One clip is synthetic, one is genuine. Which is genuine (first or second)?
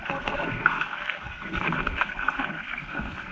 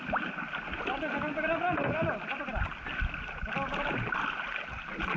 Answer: second